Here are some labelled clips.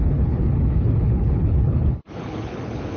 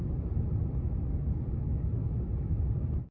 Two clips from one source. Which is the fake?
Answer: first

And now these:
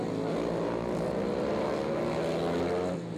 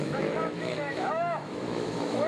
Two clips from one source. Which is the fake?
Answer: second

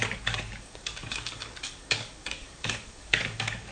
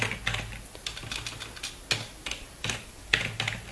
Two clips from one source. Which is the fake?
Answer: first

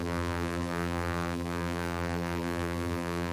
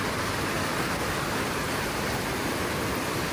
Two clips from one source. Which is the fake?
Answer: first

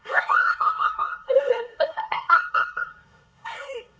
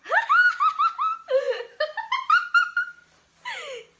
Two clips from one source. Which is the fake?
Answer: first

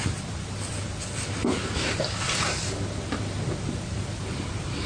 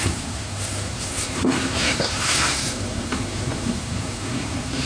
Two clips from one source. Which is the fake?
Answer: second